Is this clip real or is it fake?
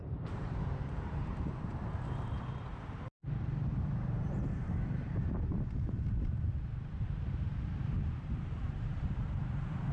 fake